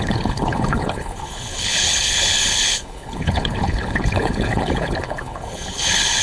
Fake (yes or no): yes